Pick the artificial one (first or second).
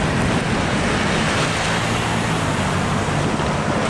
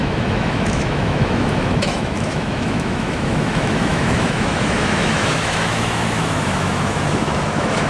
second